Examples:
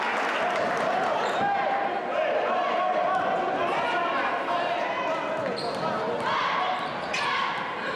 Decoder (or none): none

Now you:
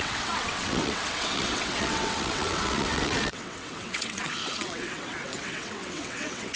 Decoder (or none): vocoder, WaveNeXt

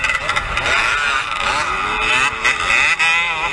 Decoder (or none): none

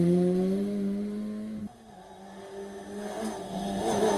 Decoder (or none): none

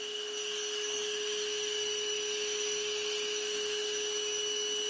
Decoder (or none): autoencoder, DAC-VAE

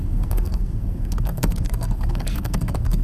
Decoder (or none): codec, SNAC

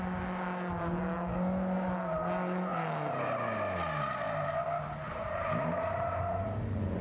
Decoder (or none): none